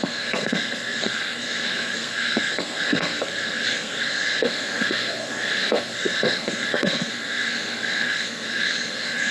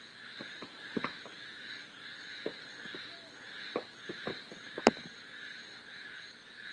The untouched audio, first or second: second